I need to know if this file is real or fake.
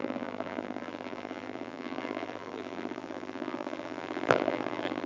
fake